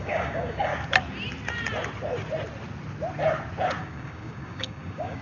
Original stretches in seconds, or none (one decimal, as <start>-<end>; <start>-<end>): 0.7-3.8